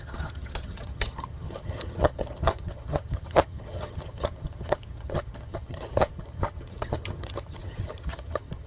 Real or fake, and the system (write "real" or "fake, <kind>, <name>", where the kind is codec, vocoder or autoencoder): fake, vocoder, HiFi-GAN